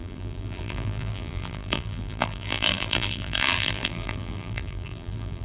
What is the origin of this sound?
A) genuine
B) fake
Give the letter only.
B